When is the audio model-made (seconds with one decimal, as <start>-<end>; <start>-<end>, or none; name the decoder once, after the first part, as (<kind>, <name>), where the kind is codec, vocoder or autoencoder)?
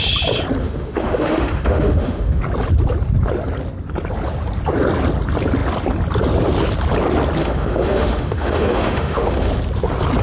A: 0.6-2.4 (autoencoder, DAC-VAE); 7.4-9.5